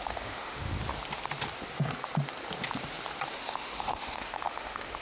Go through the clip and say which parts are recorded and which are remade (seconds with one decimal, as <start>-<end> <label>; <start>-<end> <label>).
0.0-0.7 remade; 0.7-3.3 recorded; 3.3-5.0 remade